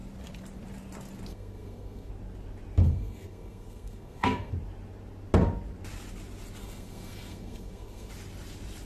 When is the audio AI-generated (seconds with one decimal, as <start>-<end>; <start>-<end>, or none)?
1.3-2.1; 2.8-4.5; 6.6-8.1